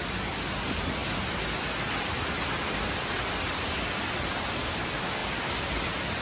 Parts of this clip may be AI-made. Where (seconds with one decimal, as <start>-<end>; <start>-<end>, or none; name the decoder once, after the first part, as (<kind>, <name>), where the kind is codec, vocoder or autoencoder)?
none